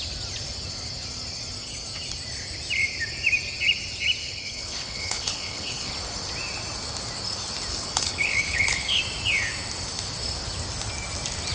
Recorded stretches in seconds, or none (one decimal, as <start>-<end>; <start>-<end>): 0.0-4.2; 5.9-7.7; 9.0-11.5